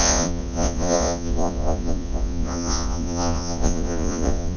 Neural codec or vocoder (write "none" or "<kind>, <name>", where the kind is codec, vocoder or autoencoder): vocoder, Vocos